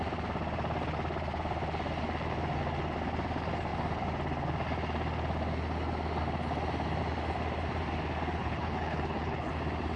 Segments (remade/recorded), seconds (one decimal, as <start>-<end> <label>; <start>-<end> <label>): 0.0-8.4 recorded; 8.4-9.5 remade; 9.5-10.0 recorded